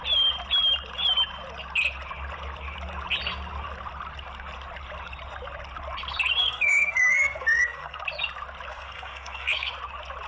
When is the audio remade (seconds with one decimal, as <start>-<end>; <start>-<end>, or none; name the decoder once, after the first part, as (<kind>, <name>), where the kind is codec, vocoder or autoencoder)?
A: 6.4-8.0 (codec, SNAC); 8.7-9.7